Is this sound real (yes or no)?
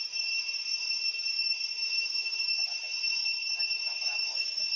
no